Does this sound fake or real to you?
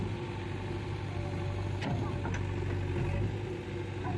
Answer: real